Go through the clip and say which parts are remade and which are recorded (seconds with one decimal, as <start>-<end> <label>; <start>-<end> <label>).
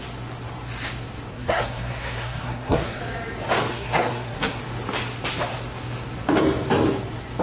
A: 0.0-1.3 recorded; 1.3-3.0 remade; 3.0-3.7 recorded; 3.7-4.6 remade; 4.6-7.4 recorded